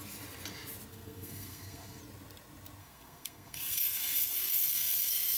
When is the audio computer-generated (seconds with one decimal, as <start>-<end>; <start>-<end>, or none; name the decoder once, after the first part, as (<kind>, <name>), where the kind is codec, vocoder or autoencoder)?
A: 0.9-2.0 (codec, SNAC); 2.8-5.4